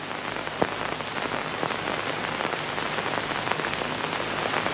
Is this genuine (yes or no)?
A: yes